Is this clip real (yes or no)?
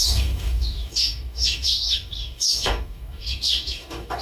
no